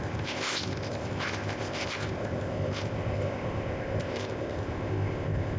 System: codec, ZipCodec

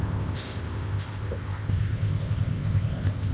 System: codec, ZipCodec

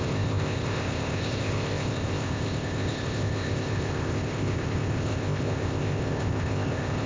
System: codec, ZipCodec